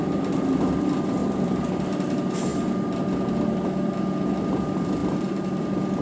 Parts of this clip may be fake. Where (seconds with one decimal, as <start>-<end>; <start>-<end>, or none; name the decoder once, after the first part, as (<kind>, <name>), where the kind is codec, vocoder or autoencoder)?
0.0-2.5 (vocoder, BigVGAN v2); 4.4-6.0